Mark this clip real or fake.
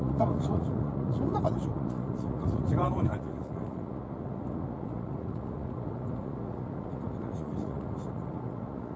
fake